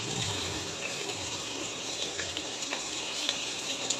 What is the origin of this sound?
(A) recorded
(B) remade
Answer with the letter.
B